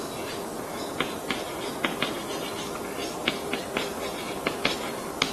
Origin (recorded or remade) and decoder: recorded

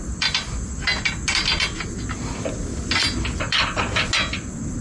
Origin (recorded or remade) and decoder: recorded